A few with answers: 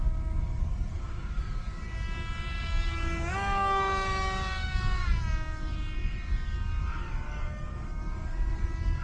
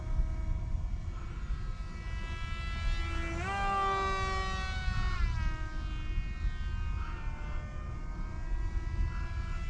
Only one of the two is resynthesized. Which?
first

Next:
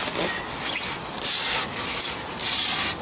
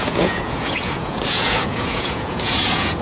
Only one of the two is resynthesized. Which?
second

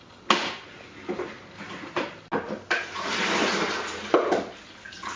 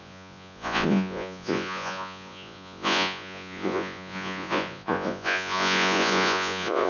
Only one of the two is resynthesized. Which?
second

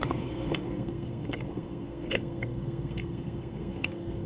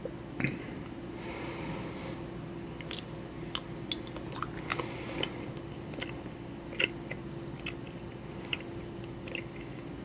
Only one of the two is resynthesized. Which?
first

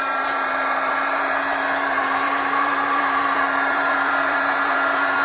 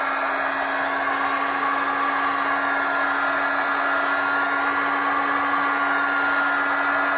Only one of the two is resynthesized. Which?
first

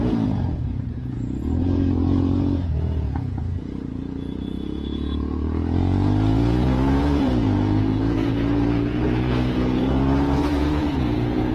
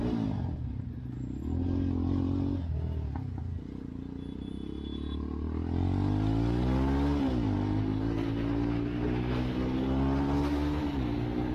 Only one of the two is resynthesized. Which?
first